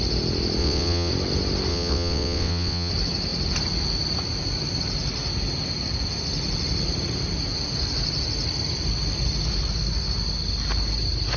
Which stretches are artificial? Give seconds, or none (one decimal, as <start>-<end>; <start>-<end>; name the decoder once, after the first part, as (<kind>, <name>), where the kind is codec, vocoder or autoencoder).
0.6-1.1 (vocoder, WaveNeXt); 1.7-2.9